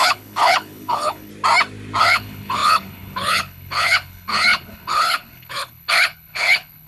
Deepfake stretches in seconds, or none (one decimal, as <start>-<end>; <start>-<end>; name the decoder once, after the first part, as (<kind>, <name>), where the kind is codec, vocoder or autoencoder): 0.0-1.3 (codec, HILCodec); 2.0-6.9